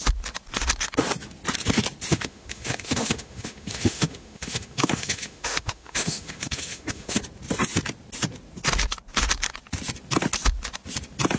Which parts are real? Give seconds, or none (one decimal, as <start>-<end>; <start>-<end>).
0.0-2.1; 7.2-11.4